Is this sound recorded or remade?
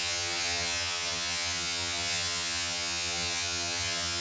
remade